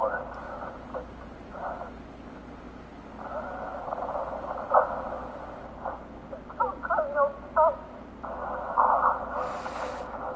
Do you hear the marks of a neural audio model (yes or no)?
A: no